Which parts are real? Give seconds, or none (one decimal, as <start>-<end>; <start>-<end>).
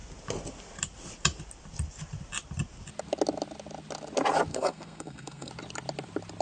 0.0-4.5; 5.5-6.4